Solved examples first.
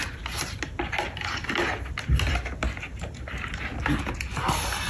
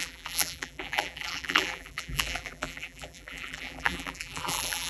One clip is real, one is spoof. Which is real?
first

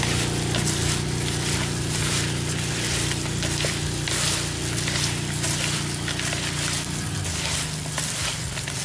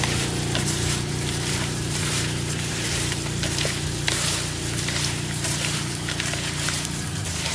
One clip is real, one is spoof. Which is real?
first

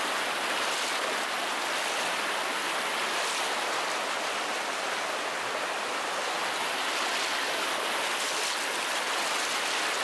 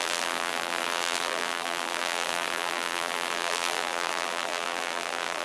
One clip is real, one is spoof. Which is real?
first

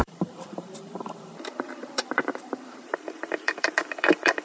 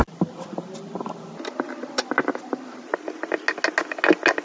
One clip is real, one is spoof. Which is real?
second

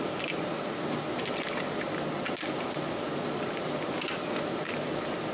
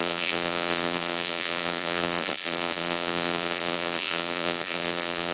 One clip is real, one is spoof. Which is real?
first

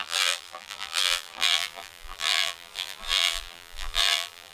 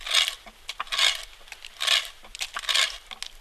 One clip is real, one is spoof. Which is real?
second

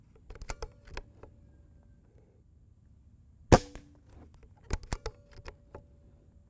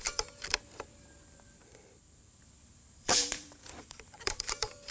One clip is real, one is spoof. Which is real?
first